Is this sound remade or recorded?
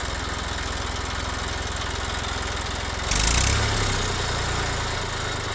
recorded